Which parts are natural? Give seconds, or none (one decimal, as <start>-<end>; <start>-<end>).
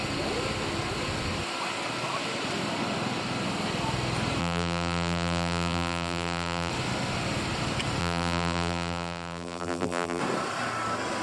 0.0-4.4; 6.7-8.0; 10.2-11.2